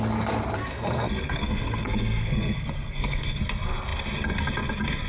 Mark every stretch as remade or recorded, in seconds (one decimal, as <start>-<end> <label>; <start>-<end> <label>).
0.0-0.7 recorded; 0.7-3.4 remade; 3.4-5.1 recorded